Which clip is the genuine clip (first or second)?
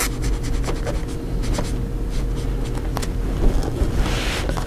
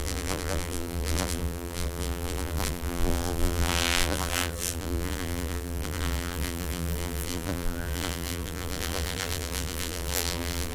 first